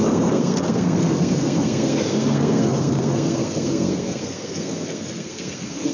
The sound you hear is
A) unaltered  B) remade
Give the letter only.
B